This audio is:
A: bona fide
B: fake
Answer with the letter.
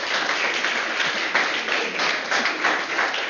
A